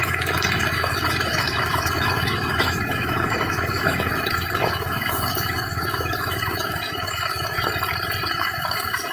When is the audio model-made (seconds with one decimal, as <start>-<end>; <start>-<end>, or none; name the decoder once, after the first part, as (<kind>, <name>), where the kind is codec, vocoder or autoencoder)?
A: 0.0-7.7 (autoencoder, DAC-VAE); 8.3-9.1